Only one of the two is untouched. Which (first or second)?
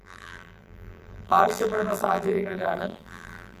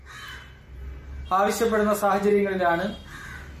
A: second